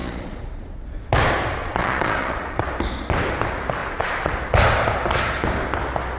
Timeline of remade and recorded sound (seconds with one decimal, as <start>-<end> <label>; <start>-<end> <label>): 0.0-1.1 remade; 1.1-1.6 recorded; 1.6-2.7 remade; 2.7-3.8 recorded; 3.8-4.3 remade; 4.3-6.2 recorded